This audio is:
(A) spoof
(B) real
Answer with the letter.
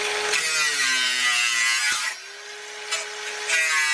B